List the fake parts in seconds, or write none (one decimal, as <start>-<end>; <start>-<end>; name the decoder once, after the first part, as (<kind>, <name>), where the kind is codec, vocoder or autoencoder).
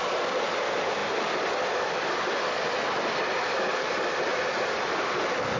none